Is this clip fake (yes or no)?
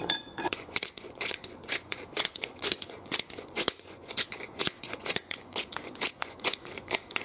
yes